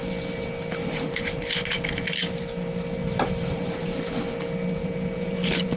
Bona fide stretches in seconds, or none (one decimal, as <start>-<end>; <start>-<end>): 0.0-0.8; 1.9-3.0; 4.1-4.8